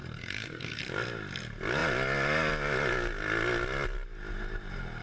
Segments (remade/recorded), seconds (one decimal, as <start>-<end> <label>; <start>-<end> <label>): 0.0-0.8 remade; 0.8-5.0 recorded